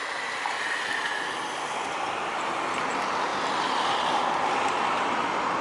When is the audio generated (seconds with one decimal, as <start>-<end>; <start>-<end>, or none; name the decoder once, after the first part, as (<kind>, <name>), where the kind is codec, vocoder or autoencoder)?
none